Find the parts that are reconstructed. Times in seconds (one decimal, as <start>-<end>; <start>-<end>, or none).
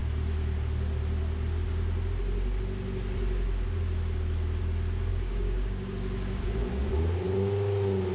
5.1-5.9